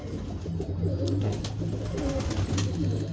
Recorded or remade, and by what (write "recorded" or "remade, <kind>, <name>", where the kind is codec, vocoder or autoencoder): recorded